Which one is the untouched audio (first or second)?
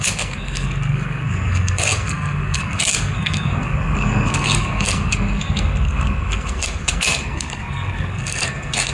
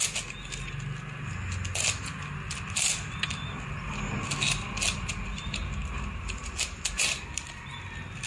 second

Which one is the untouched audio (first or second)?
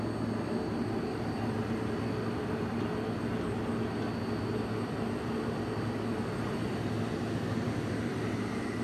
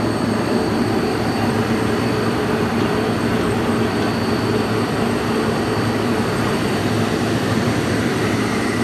first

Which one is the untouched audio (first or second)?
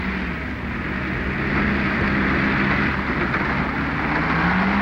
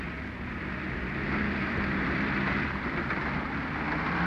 first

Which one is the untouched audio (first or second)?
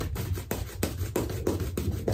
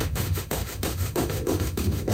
first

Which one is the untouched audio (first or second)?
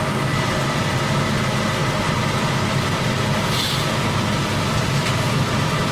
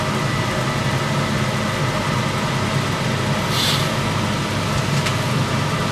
second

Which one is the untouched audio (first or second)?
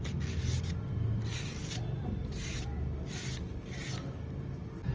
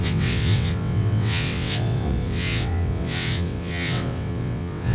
first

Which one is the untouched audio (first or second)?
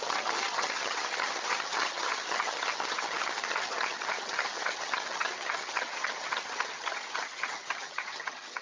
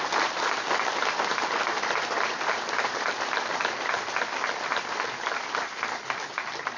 second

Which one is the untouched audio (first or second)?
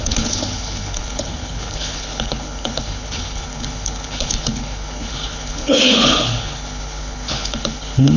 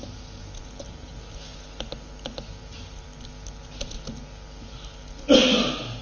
second